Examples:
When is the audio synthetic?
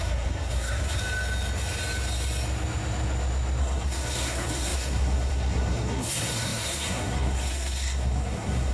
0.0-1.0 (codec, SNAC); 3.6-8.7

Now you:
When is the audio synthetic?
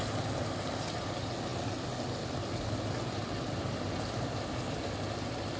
none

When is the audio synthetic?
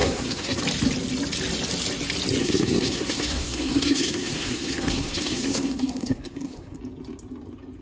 0.0-0.6 (codec, SNAC); 2.4-6.8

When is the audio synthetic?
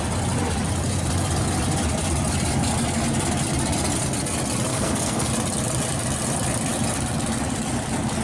4.7-5.3 (codec, SNAC)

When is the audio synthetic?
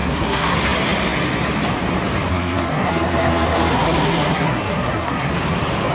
0.0-0.6 (codec, SNAC); 2.3-5.3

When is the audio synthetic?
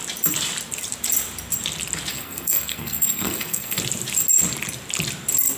2.1-3.8 (codec, SNAC)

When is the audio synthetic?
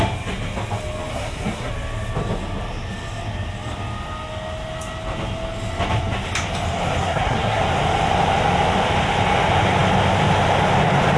1.1-1.7 (codec, SNAC); 7.0-7.6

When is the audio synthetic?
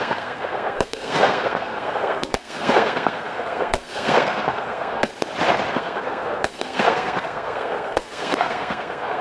0.0-5.1 (codec, SNAC); 5.7-9.2